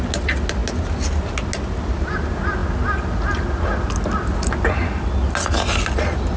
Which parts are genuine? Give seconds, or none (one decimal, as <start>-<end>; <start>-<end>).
0.0-6.4

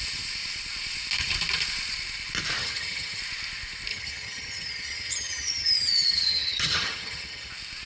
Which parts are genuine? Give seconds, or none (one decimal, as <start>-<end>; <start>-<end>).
0.0-2.6; 3.2-3.9; 7.5-7.9

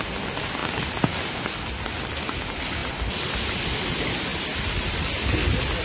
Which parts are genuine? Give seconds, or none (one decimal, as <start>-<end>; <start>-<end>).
0.0-5.8

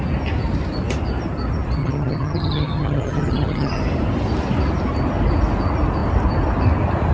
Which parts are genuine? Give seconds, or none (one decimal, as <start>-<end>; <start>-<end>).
0.0-1.8; 3.8-7.1

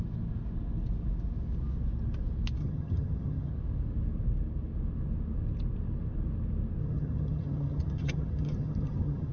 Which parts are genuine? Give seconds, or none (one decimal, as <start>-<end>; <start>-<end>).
0.0-2.6; 3.5-6.8

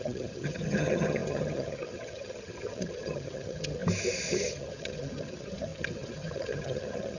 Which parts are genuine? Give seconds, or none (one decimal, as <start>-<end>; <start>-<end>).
3.8-4.3